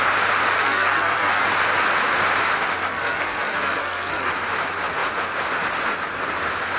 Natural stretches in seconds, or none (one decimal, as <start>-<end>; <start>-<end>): 0.0-0.6; 1.4-2.8; 4.3-6.8